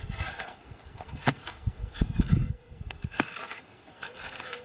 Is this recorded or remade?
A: remade